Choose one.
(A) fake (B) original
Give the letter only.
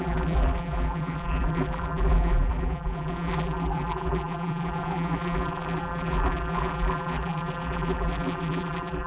A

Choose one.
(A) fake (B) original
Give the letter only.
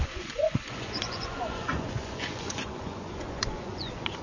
A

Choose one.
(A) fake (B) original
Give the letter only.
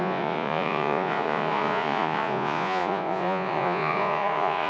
A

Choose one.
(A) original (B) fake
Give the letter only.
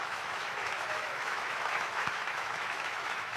B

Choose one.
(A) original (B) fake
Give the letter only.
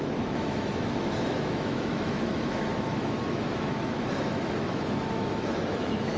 B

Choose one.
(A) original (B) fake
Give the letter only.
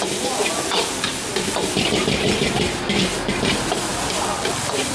A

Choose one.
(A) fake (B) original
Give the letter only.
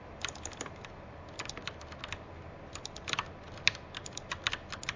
B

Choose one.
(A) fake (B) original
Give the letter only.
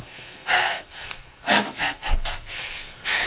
A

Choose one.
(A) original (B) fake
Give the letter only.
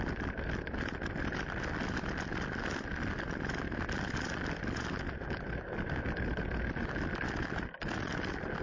A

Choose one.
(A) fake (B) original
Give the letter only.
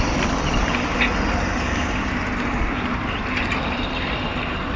B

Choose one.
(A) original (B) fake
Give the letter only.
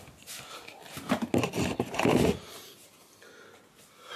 A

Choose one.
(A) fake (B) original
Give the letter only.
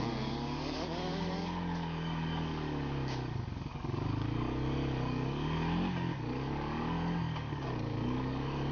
A